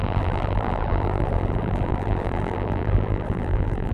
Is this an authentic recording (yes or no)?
no